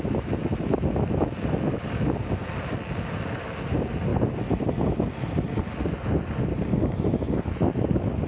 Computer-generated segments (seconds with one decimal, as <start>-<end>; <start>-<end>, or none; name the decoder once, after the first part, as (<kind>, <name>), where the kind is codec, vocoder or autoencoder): none